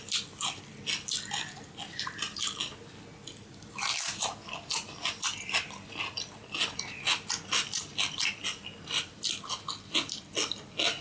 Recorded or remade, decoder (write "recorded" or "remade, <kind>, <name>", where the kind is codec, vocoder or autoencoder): recorded